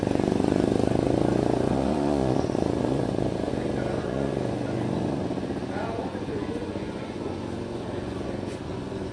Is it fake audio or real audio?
fake